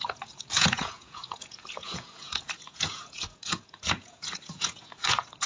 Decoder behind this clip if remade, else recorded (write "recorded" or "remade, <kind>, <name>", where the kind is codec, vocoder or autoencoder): remade, vocoder, Vocos